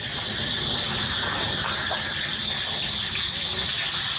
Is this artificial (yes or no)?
no